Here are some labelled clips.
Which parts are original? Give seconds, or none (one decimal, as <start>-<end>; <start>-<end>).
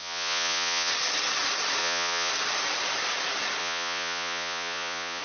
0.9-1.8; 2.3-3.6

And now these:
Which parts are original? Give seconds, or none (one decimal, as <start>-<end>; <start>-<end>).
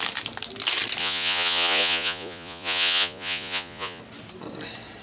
0.0-1.0; 4.0-5.0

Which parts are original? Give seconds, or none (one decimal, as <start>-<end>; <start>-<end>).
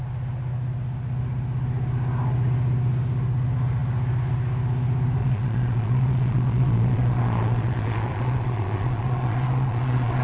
0.0-5.2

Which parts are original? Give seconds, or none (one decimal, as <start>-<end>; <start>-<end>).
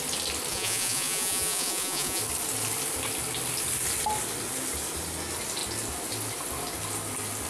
0.0-0.5; 2.2-7.5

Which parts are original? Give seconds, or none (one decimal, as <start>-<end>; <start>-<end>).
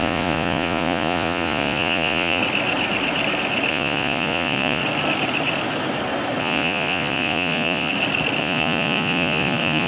2.4-3.7; 4.8-6.4; 7.9-8.4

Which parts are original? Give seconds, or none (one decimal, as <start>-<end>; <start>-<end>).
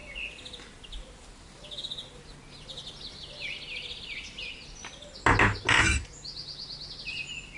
0.0-7.6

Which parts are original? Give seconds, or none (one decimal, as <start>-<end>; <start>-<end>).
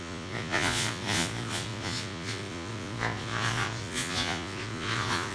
none